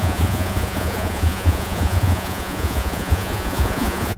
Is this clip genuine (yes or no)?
no